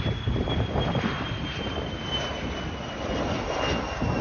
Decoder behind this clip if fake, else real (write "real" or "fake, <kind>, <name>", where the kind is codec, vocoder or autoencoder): real